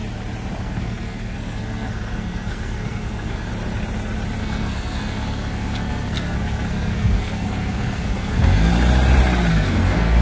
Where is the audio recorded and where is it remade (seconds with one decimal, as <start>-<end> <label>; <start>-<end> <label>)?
0.0-0.6 recorded; 0.6-3.5 remade; 3.5-4.4 recorded; 4.4-8.7 remade; 8.7-9.5 recorded; 9.5-10.2 remade